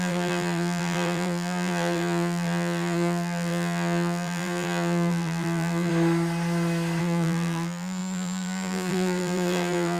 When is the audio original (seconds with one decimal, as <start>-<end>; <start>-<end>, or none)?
5.9-7.0